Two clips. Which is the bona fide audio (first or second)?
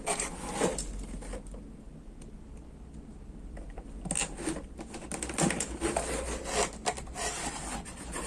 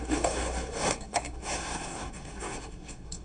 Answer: first